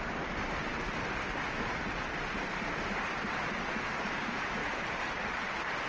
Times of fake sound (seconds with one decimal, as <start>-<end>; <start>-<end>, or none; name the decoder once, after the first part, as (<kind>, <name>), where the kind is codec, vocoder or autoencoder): none